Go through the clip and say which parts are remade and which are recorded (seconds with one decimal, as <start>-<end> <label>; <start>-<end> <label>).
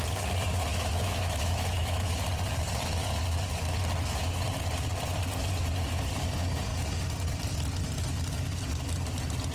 0.0-0.7 recorded; 0.7-2.1 remade; 2.1-9.5 recorded